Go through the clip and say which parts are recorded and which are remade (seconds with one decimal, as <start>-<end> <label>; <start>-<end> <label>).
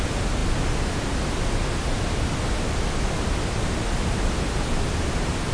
0.0-5.5 recorded